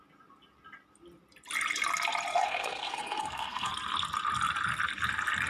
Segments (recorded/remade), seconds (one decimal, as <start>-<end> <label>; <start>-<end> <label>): 0.0-2.3 recorded; 2.3-3.7 remade; 3.7-5.5 recorded